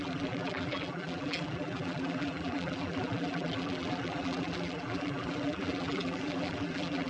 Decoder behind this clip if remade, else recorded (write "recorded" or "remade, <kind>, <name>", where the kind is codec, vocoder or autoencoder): remade, vocoder, BigVGAN v2